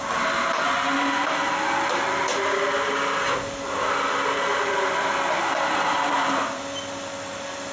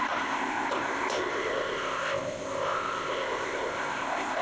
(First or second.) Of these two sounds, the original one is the first